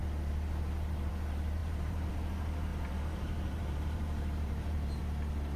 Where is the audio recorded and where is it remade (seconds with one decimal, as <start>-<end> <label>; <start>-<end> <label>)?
0.0-1.6 recorded; 1.6-2.1 remade; 2.1-2.7 recorded; 2.7-5.0 remade; 5.0-5.6 recorded